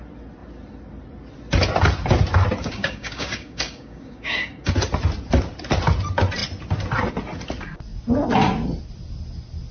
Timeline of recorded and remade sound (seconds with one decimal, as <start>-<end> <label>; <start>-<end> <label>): 0.0-2.6 recorded; 2.6-4.7 remade; 4.7-9.7 recorded